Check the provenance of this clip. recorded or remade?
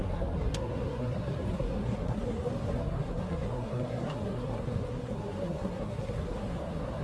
remade